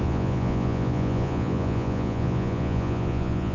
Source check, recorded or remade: remade